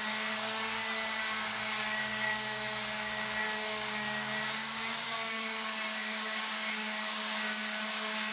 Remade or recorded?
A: remade